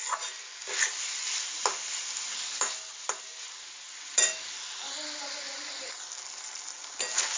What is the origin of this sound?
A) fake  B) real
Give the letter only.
B